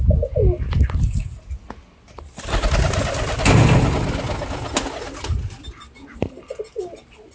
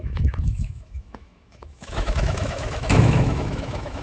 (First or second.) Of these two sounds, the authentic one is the first